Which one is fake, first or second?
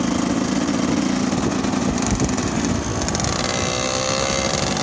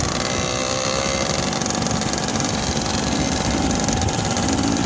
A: second